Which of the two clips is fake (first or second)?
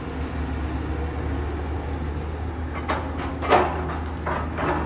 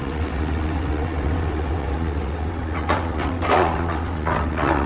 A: second